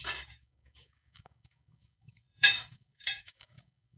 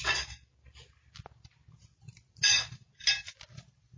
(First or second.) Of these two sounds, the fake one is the first